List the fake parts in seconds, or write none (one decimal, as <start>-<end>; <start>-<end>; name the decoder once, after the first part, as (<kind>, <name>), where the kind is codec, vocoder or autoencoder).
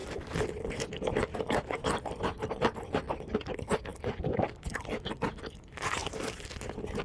none